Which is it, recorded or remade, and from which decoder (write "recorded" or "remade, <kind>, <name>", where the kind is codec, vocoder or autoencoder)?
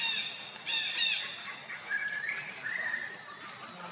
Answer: recorded